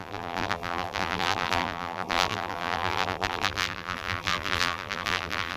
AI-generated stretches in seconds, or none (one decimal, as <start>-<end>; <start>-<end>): 0.0-5.6